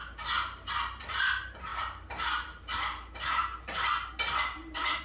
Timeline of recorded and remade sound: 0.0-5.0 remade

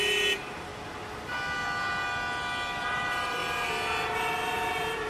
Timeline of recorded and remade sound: 0.0-0.7 remade; 0.7-2.8 recorded; 2.8-3.4 remade; 3.4-4.1 recorded; 4.1-5.1 remade

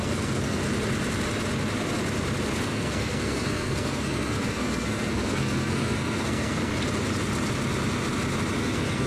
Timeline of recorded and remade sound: 0.0-0.6 remade; 0.6-2.6 recorded; 2.6-6.7 remade; 6.7-8.6 recorded; 8.6-9.1 remade